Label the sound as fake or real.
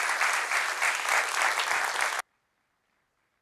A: real